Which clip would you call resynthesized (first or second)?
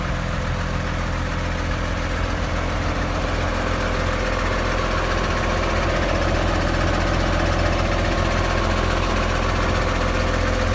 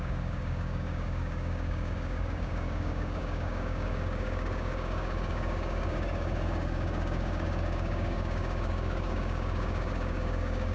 second